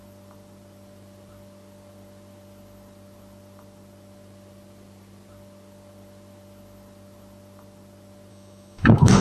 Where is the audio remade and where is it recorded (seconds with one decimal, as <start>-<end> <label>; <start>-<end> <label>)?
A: 0.0-8.3 recorded; 8.3-9.2 remade